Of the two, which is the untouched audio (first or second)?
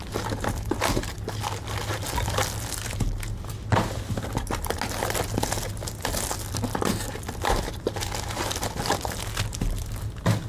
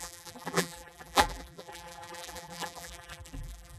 first